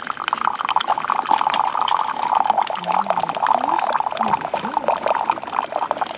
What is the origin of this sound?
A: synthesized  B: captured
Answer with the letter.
B